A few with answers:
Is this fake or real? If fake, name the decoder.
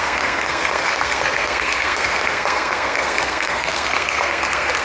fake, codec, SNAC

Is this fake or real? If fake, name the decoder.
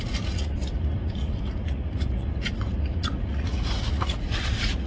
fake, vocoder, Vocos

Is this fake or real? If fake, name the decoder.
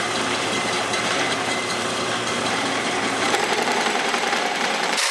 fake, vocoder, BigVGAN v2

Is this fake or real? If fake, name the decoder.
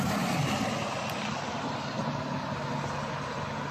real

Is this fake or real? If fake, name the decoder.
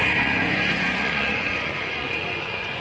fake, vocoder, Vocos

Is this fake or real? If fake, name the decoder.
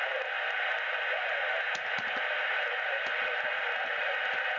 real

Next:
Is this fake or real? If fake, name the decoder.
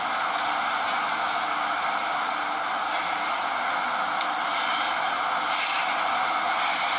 real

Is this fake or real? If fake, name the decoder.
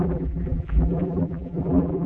fake, vocoder, BigVGAN v2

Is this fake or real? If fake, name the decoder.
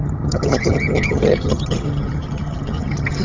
fake, vocoder, HiFi-GAN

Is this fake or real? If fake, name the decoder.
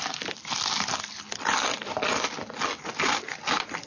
real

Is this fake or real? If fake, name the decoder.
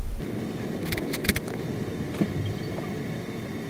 fake, vocoder, BigVGAN v2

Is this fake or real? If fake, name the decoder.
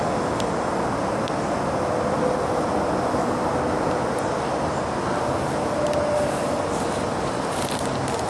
real